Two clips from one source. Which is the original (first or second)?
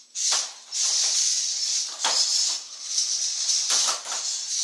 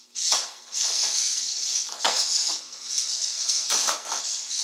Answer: first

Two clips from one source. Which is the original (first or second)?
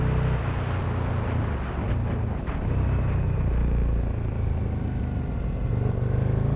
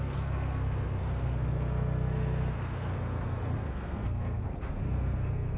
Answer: first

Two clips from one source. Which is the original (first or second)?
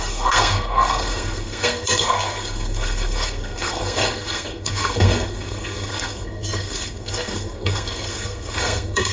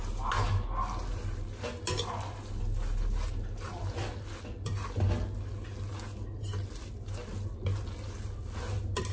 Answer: second